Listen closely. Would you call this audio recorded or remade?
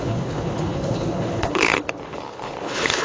remade